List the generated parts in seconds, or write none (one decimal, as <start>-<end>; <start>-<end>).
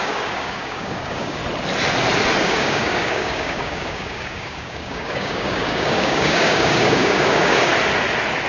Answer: 0.0-1.4; 2.4-7.7